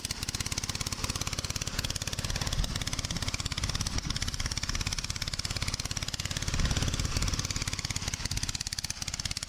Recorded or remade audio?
recorded